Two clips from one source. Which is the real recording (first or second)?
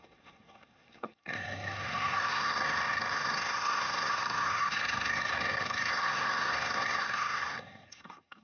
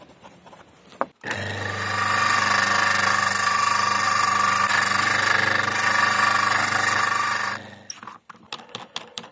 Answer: second